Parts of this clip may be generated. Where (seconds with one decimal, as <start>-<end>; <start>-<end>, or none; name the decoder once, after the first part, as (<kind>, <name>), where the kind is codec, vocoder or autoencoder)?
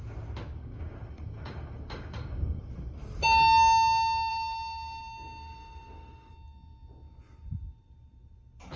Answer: 0.6-2.6 (codec, DAC); 4.3-6.3